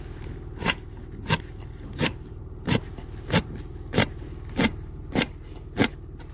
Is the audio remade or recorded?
remade